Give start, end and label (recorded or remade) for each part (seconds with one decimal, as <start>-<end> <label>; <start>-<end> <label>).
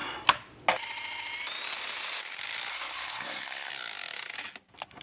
0.0-2.7 recorded; 2.7-3.7 remade; 3.7-5.0 recorded